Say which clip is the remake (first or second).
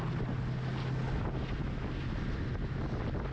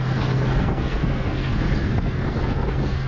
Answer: second